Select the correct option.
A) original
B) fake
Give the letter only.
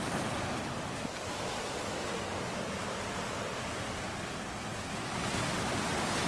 A